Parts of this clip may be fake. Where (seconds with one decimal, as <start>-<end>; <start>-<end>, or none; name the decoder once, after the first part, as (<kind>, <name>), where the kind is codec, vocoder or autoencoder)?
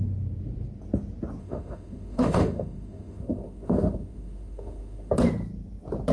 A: 1.4-5.1 (autoencoder, DAC-VAE)